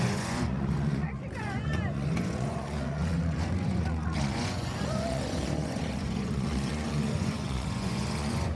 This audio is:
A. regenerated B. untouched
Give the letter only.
A